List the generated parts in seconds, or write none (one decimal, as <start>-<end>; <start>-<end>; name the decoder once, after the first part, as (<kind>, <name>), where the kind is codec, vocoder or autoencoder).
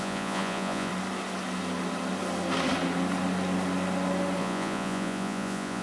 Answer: 0.0-0.9 (vocoder, Vocos); 4.4-5.8